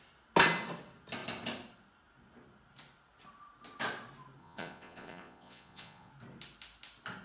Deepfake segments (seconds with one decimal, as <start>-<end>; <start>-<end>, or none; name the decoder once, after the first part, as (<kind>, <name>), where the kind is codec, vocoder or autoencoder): 4.4-6.1 (vocoder, Vocos)